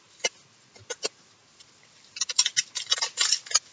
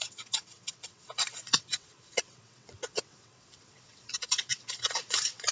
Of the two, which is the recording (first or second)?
first